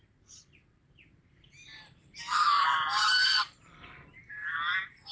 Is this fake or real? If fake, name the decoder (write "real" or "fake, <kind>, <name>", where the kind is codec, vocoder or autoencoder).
fake, vocoder, BigVGAN v2